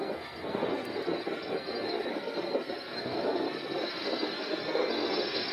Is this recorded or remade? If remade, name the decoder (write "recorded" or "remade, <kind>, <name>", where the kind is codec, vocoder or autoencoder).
remade, codec, SNAC